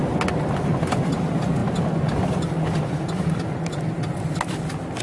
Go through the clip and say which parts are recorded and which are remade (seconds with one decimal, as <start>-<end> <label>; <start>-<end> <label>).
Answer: 0.0-5.0 recorded

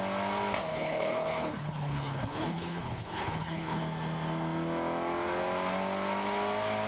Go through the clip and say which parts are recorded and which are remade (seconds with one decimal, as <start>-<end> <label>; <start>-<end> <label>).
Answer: 0.0-0.7 recorded; 0.7-3.8 remade; 3.8-6.9 recorded

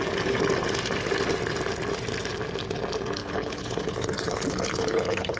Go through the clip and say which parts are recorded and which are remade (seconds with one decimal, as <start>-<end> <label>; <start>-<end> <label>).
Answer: 0.0-3.2 recorded; 3.2-5.4 remade

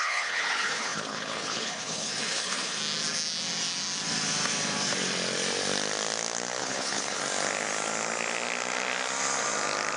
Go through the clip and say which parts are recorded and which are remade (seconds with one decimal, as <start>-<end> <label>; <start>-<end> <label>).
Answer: 0.0-2.8 remade; 2.8-6.6 recorded; 6.6-7.2 remade; 7.2-10.0 recorded

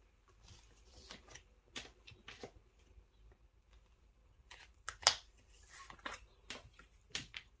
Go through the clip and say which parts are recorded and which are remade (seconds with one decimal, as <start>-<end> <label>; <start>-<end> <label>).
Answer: 0.0-7.6 recorded